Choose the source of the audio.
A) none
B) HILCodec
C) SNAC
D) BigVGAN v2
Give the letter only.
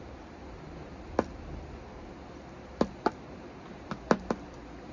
A